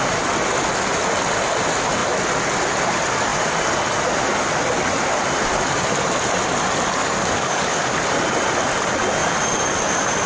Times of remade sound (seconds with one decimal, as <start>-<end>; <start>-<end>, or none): 7.0-8.0